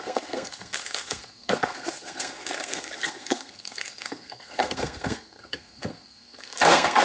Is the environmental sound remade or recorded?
remade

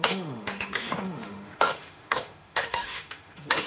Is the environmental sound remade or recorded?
remade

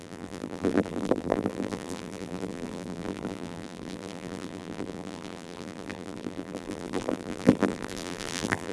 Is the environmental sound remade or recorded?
remade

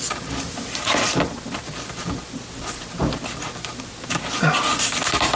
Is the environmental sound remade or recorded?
recorded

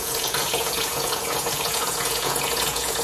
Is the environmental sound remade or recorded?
remade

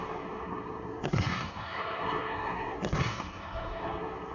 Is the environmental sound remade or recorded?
remade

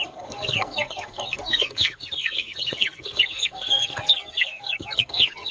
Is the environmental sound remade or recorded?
remade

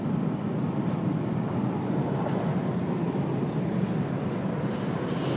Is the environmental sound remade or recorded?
recorded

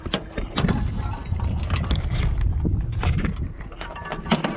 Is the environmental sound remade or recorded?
recorded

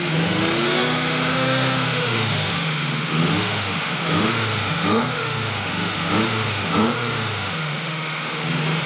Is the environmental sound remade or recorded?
remade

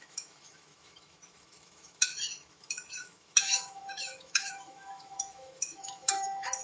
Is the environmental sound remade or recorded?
remade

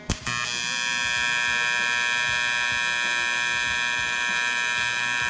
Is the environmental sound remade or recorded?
recorded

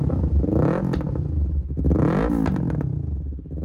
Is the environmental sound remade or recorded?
recorded